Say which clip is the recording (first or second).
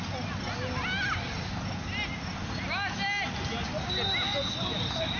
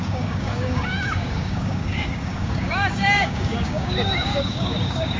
first